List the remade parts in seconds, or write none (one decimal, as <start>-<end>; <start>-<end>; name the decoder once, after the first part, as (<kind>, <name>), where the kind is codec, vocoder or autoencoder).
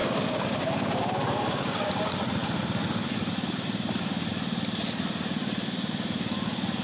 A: 0.0-1.9 (codec, DAC)